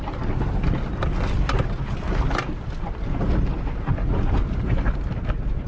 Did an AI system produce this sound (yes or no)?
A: no